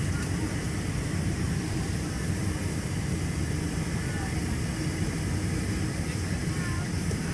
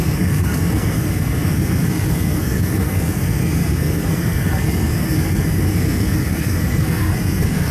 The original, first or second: first